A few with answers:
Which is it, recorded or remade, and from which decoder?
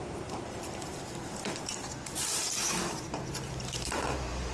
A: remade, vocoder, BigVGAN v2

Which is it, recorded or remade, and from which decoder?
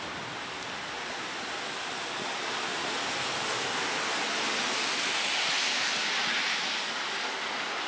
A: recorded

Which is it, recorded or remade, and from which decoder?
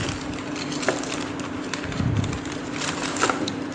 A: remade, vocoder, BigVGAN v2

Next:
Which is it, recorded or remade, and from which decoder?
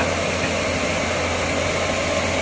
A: recorded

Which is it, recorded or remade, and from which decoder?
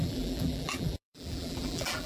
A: remade, vocoder, BigVGAN v2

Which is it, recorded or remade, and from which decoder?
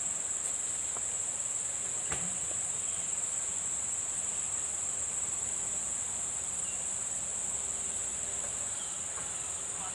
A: remade, vocoder, BigVGAN v2